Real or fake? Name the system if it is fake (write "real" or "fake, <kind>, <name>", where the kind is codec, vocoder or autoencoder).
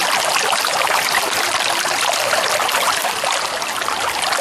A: real